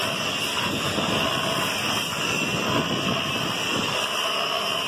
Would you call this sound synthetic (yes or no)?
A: no